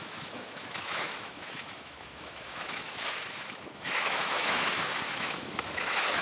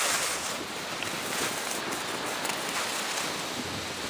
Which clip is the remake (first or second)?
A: first